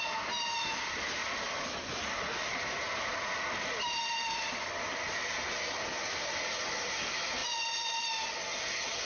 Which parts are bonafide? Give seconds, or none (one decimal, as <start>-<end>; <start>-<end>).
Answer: 0.0-1.2; 4.6-7.4; 8.0-9.0